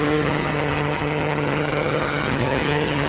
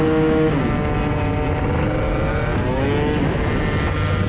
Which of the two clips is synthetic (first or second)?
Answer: first